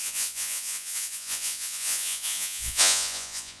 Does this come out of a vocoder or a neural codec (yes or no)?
yes